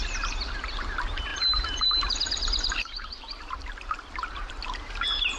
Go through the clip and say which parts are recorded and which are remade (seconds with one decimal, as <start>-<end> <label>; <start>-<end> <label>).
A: 0.0-1.3 recorded; 1.3-4.5 remade; 4.5-5.4 recorded